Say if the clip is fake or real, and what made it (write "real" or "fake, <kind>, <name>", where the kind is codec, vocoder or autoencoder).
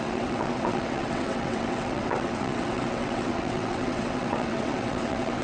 fake, vocoder, WaveNeXt